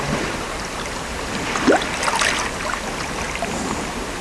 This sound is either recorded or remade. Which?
recorded